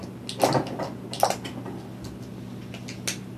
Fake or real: real